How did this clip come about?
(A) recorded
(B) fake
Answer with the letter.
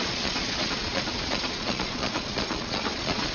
B